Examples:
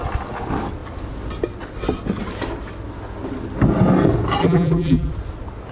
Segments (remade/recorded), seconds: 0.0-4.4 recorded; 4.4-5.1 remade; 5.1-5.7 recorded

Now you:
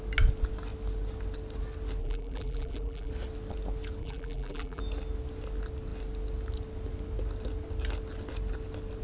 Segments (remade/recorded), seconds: 0.0-2.0 recorded; 2.0-3.1 remade; 3.1-4.0 recorded; 4.0-4.8 remade; 4.8-9.0 recorded

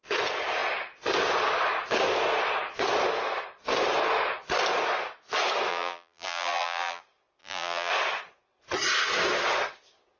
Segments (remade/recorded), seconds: 0.0-5.7 recorded; 5.7-7.0 remade; 7.0-7.4 recorded; 7.4-7.9 remade; 7.9-10.2 recorded

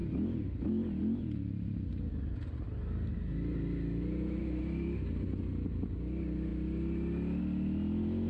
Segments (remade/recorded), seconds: 0.0-8.3 recorded